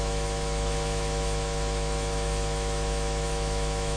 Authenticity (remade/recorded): remade